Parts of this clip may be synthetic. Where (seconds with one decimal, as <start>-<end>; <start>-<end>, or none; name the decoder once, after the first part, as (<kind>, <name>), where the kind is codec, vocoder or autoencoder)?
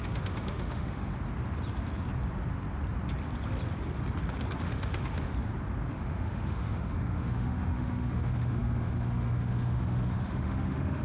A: 0.0-1.1 (autoencoder, DAC-VAE); 4.6-5.3; 5.9-11.0